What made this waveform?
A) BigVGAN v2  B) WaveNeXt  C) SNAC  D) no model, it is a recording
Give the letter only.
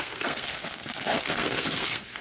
C